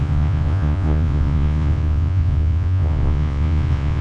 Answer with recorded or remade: remade